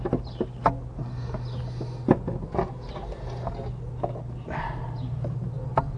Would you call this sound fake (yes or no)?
no